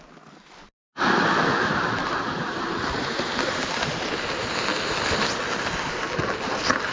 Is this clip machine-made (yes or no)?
no